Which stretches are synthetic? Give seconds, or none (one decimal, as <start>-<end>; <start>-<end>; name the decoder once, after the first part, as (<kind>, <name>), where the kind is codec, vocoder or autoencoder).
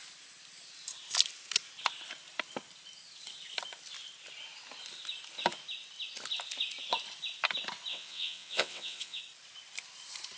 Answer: 7.9-9.2 (vocoder, WaveNeXt)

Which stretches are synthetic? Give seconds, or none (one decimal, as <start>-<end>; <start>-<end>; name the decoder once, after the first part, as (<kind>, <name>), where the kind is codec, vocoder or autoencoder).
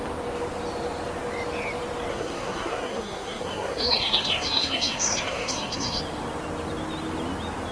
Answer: 2.1-6.0 (codec, SNAC)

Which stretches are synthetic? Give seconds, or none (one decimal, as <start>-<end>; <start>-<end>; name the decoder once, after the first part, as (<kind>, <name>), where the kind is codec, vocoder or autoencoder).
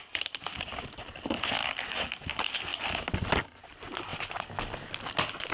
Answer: 1.6-2.2 (codec, DAC)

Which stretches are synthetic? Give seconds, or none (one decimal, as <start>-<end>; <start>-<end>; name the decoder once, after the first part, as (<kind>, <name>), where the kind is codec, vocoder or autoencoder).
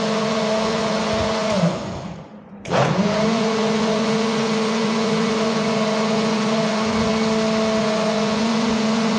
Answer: 0.0-7.1 (vocoder, Vocos); 7.8-9.2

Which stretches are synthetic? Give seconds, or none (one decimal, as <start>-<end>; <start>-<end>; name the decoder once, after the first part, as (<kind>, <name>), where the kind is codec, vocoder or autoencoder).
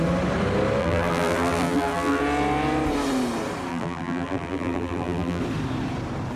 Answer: 0.8-2.2 (vocoder, BigVGAN v2); 3.7-5.4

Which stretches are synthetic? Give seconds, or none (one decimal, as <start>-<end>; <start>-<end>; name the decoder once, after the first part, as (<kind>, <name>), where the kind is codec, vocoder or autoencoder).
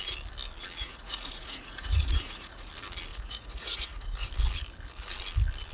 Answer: 0.8-2.7 (vocoder, Vocos); 3.1-4.3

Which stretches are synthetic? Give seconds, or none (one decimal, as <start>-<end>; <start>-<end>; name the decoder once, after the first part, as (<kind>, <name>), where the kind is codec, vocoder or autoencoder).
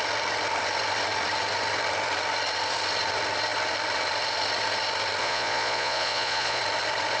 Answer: 5.2-6.6 (vocoder, Vocos)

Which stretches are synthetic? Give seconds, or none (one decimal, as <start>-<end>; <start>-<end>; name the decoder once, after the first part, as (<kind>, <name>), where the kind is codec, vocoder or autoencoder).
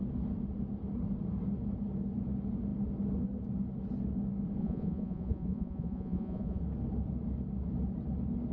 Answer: 4.6-6.6 (vocoder, Vocos)